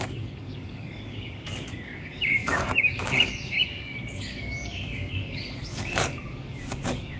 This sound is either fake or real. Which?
fake